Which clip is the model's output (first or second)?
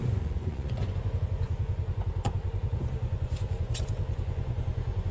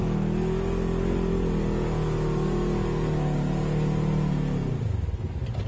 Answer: first